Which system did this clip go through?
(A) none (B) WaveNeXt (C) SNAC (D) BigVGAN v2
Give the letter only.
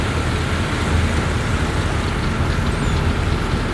A